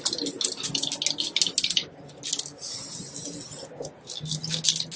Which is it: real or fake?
real